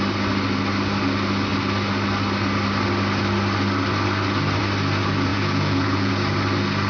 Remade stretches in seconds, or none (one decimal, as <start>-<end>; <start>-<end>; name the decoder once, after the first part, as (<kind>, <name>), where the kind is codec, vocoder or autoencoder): 5.3-6.1 (vocoder, Vocos)